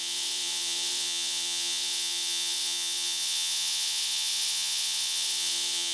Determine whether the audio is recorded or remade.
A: remade